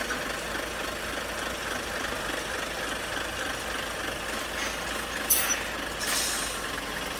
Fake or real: real